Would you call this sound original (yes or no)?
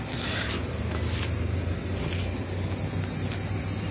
yes